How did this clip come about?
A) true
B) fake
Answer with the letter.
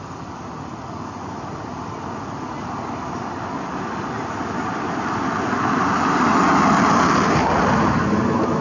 A